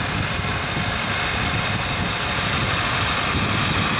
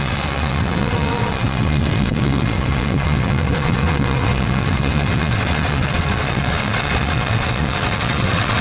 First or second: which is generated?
second